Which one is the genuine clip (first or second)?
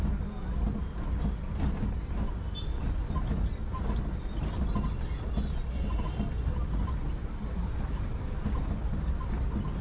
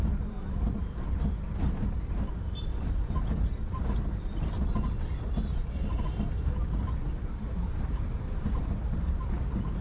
first